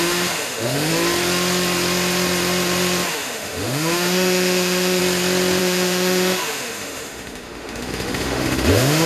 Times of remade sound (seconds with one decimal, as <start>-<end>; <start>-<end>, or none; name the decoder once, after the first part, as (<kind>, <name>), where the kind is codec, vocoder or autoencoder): 0.0-0.9 (autoencoder, DAC-VAE); 3.1-5.0; 5.6-9.1